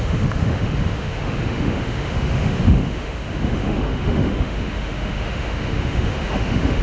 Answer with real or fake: fake